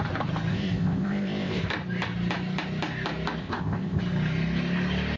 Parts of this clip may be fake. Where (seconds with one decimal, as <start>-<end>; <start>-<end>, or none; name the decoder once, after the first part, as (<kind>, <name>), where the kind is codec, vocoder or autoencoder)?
0.5-1.6 (codec, ZipCodec); 3.4-4.0